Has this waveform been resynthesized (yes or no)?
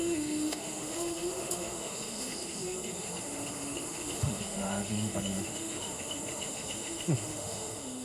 yes